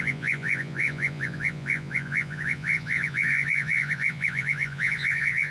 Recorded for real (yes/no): no